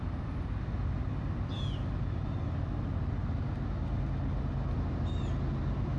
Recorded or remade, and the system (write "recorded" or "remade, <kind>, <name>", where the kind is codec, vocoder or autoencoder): recorded